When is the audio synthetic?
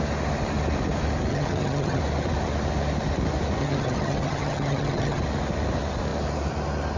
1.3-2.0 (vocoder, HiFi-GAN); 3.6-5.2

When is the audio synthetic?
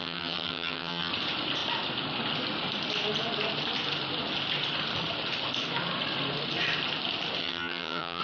0.0-1.1 (vocoder, HiFi-GAN); 7.4-8.2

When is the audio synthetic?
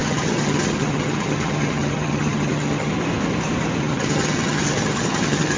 0.0-2.9 (vocoder, HiFi-GAN); 3.8-5.6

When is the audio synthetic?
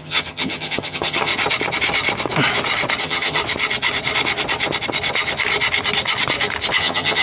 0.0-1.3 (vocoder, HiFi-GAN); 3.0-3.4; 6.8-7.2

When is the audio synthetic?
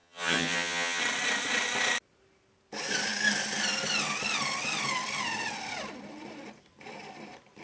0.0-1.0 (vocoder, HiFi-GAN)